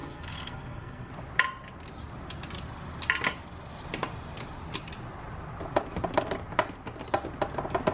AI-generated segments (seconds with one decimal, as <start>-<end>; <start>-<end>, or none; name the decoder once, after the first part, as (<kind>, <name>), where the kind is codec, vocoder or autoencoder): 0.0-1.1 (codec, SNAC)